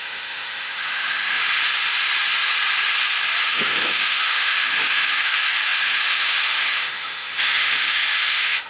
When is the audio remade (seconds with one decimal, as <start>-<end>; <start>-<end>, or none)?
0.0-1.4; 3.4-8.7